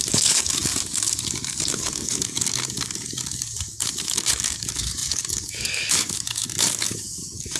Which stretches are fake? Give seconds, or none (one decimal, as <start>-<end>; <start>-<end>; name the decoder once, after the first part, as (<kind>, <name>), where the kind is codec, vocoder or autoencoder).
0.0-7.6 (codec, DAC)